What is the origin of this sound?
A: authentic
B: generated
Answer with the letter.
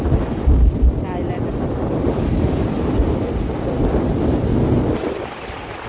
A